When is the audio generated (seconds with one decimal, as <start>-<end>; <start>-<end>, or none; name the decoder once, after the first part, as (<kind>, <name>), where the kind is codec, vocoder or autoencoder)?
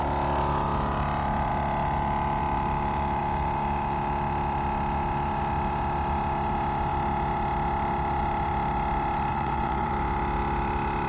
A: 9.3-9.9 (vocoder, WaveNeXt)